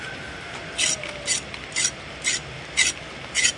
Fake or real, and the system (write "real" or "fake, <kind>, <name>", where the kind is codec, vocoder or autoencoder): real